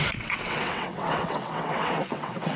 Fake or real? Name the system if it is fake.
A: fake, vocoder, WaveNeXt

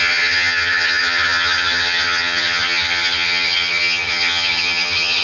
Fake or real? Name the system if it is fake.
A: fake, vocoder, HiFi-GAN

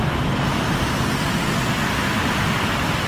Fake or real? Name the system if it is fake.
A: real